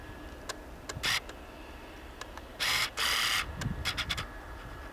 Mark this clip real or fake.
real